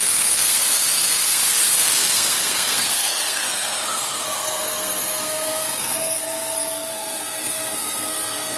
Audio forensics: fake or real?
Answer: fake